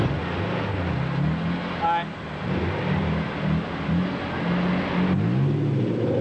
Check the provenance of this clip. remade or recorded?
recorded